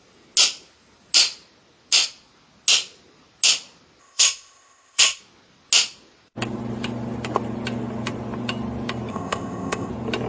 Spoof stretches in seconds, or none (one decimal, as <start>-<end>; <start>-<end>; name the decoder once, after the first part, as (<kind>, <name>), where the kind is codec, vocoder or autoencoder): 4.0-5.2 (codec, ZipCodec); 9.1-9.9